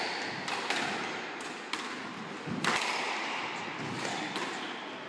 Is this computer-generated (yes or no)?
no